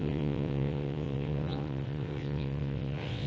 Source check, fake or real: fake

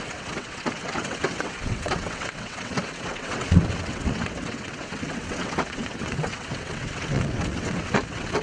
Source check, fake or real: fake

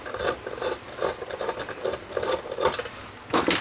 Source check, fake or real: real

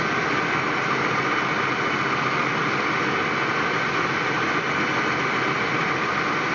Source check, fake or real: real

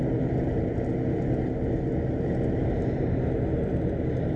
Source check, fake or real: real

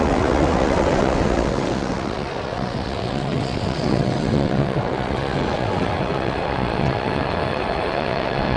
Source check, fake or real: fake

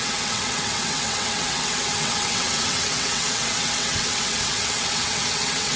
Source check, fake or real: fake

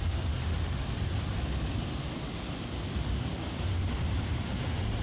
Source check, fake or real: real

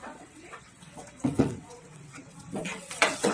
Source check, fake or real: fake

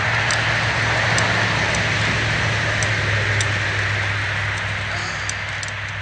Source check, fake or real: real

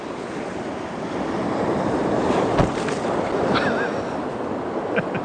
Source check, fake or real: real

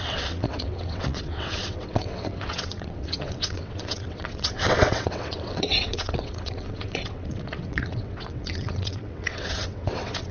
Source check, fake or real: fake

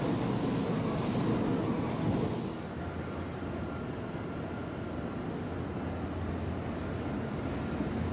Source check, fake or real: real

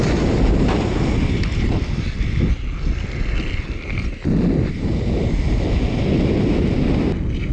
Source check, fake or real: real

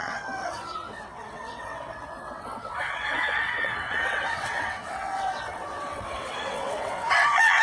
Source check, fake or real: fake